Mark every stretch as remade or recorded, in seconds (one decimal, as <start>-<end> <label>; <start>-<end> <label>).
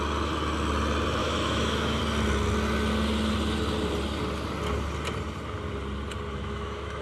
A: 0.0-1.2 recorded; 1.2-2.0 remade; 2.0-6.3 recorded; 6.3-7.0 remade